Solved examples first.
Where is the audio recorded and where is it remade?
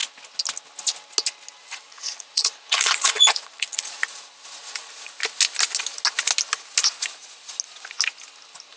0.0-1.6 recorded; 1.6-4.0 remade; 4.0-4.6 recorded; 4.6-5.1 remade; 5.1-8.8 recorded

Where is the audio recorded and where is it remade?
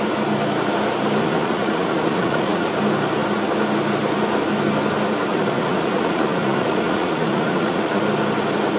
0.0-1.2 recorded; 1.2-2.7 remade; 2.7-5.3 recorded; 5.3-8.0 remade; 8.0-8.8 recorded